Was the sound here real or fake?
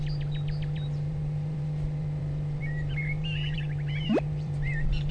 fake